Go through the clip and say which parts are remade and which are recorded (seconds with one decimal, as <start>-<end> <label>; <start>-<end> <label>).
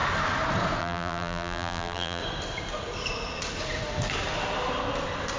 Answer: 0.0-0.8 recorded; 0.8-2.2 remade; 2.2-5.4 recorded